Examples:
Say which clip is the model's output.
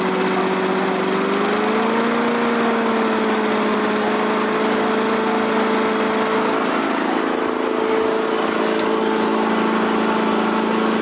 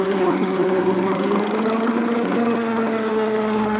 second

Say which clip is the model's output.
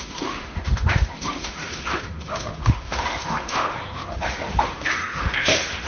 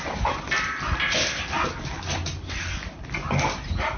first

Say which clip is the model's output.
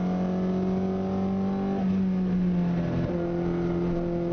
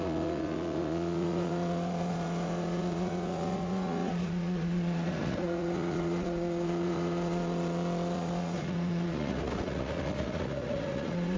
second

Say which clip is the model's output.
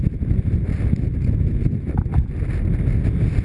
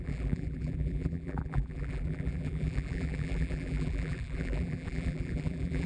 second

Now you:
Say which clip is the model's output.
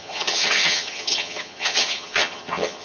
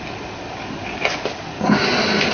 first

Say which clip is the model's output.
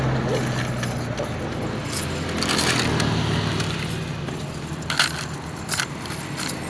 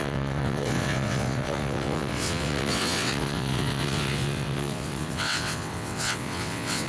second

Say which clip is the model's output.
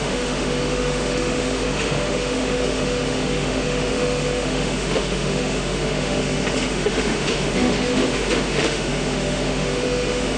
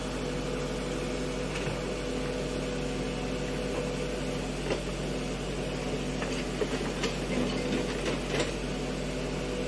first